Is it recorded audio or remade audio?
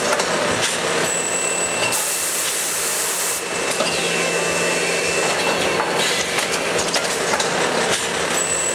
recorded